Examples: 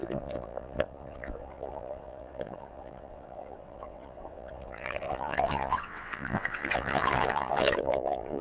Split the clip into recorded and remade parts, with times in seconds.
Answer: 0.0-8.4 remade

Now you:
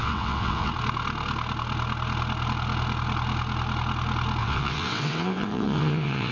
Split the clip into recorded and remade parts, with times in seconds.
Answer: 0.0-0.7 remade; 0.7-4.4 recorded; 4.4-6.3 remade

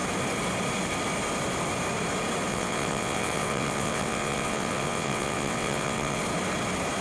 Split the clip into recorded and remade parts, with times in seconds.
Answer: 0.0-2.5 recorded; 2.5-6.2 remade; 6.2-7.0 recorded

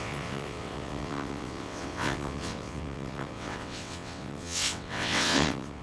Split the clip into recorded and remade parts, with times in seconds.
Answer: 0.0-5.8 remade